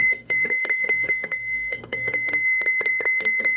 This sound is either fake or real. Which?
fake